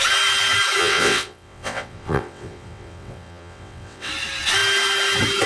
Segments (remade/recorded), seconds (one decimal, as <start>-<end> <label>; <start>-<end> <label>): 0.0-0.8 recorded; 0.8-4.1 remade; 4.1-5.5 recorded